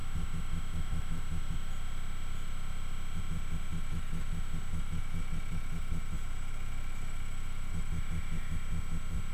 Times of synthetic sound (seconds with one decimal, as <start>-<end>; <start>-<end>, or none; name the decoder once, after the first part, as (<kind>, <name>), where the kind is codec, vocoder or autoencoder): 3.7-4.3 (autoencoder, DAC-VAE); 4.7-7.9